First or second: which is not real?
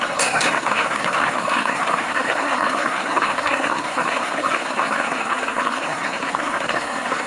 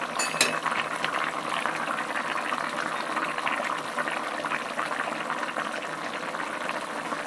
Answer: first